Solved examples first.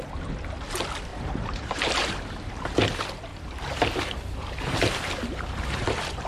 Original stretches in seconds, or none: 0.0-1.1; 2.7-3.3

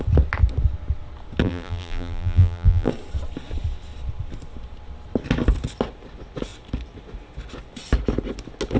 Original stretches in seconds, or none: 0.0-1.4; 2.9-8.8

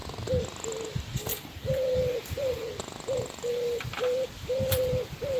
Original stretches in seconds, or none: 0.0-1.3; 2.6-3.1; 4.8-5.4

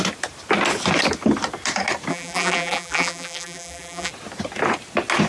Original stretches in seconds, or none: 0.0-2.1; 4.1-5.3

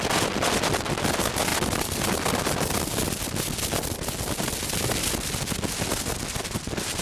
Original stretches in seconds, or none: 0.0-7.0

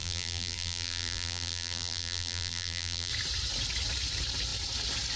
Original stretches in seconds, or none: 3.1-5.2

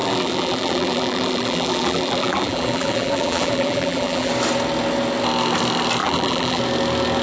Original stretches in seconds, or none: 4.3-6.0; 6.6-7.2